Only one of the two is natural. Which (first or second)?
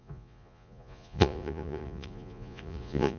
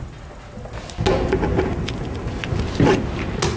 second